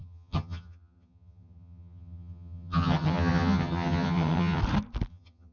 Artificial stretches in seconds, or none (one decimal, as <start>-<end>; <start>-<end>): 0.0-4.6; 5.1-5.5